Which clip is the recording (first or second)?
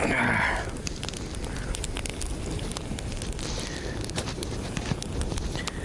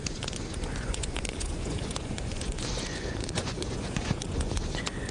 first